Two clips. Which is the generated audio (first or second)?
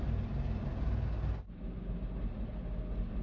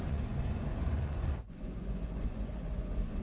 second